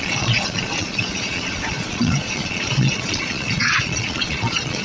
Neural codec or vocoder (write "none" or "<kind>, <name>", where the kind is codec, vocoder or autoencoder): vocoder, Vocos